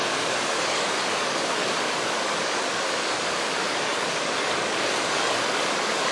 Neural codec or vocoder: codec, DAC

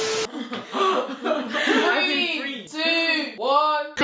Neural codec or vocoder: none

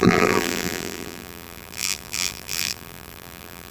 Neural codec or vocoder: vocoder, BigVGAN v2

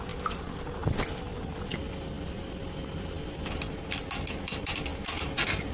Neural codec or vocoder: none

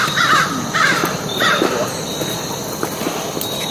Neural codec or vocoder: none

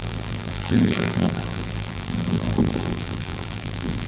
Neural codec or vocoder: vocoder, BigVGAN v2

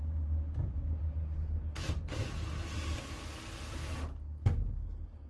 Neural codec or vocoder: none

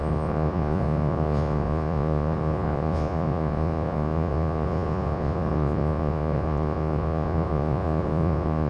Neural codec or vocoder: vocoder, Vocos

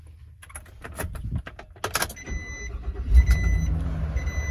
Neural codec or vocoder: none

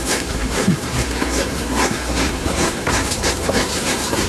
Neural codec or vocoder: codec, SNAC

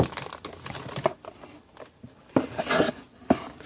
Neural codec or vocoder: none